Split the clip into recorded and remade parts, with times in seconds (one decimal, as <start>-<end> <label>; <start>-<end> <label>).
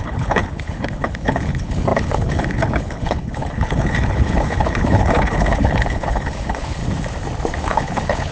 0.0-6.8 remade; 6.8-7.6 recorded; 7.6-8.3 remade